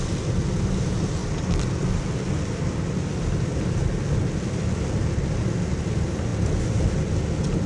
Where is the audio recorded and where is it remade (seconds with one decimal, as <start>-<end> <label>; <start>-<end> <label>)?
0.0-7.7 recorded